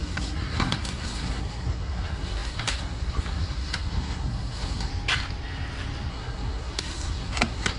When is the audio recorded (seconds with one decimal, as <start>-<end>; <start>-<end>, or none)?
4.9-6.1